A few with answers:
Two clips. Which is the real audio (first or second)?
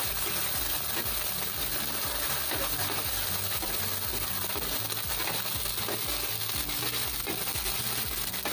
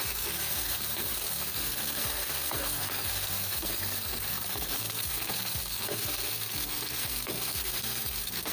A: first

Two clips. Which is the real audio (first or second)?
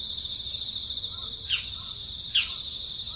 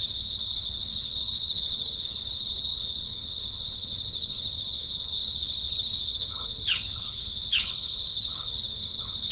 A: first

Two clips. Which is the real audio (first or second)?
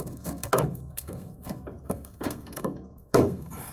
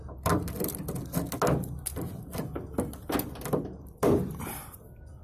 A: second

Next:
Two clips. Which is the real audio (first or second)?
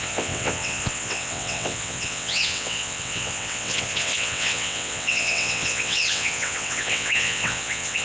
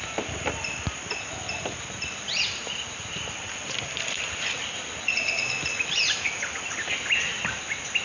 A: second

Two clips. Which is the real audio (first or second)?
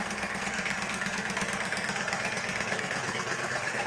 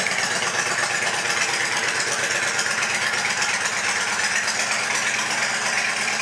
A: second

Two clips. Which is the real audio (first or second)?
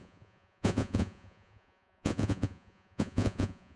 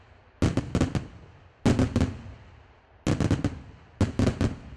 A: second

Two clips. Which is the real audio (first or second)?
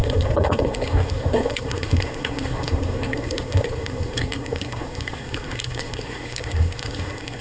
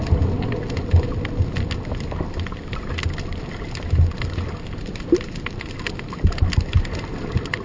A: second